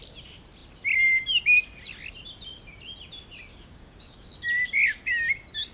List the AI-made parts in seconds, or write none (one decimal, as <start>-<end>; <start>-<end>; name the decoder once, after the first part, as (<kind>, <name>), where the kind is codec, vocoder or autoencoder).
3.5-4.3 (codec, DAC)